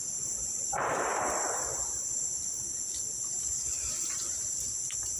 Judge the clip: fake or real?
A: real